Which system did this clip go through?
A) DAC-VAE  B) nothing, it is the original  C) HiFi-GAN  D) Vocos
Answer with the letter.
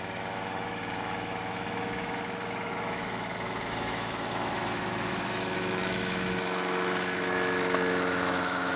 A